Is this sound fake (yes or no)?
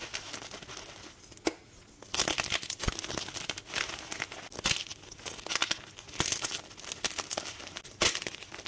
no